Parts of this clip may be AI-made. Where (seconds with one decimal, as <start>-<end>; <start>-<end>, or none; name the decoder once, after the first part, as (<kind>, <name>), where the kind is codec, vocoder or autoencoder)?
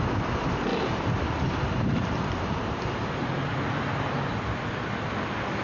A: 0.7-4.1 (vocoder, BigVGAN v2)